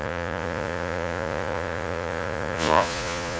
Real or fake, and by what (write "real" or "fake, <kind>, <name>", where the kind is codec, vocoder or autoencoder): fake, vocoder, Vocos